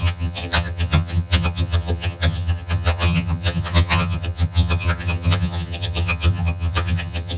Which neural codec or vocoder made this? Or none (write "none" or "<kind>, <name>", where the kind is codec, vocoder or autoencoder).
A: vocoder, HiFi-GAN